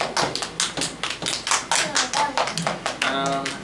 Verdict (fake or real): real